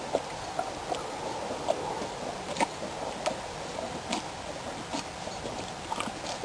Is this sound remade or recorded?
recorded